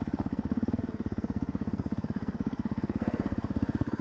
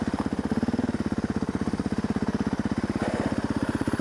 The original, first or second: second